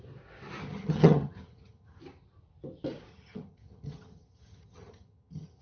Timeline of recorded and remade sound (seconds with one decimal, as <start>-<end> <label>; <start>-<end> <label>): 0.0-0.6 recorded; 0.6-2.0 remade; 2.0-3.1 recorded; 3.1-5.6 remade